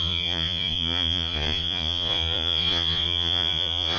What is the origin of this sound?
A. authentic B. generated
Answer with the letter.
B